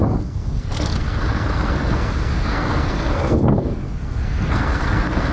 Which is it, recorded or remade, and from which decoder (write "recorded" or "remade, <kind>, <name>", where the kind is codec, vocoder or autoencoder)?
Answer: remade, codec, SNAC